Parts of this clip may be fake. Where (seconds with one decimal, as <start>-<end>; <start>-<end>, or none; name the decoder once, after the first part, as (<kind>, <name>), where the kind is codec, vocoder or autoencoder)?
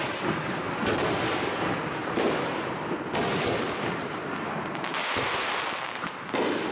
2.0-2.8 (vocoder, BigVGAN v2); 4.9-6.1